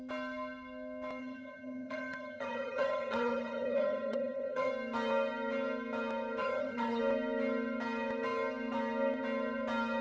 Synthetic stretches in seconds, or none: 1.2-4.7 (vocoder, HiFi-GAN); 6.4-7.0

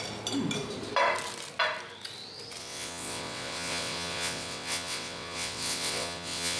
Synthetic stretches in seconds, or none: 2.6-6.6 (vocoder, WaveNeXt)

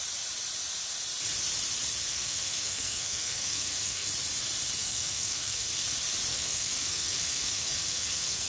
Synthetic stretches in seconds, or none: 2.1-4.1 (codec, SNAC); 4.8-5.7; 6.3-8.5

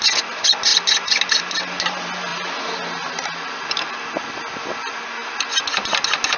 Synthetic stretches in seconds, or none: none

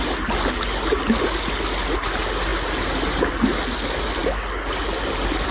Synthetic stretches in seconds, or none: none

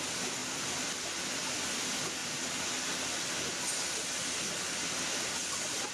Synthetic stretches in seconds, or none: 0.4-1.0 (vocoder, BigVGAN v2)

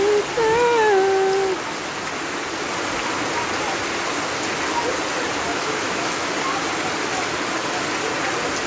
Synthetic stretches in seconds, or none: 5.5-6.3 (autoencoder, DAC-VAE)